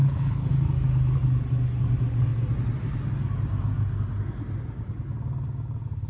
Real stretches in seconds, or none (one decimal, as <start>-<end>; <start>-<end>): 0.5-6.1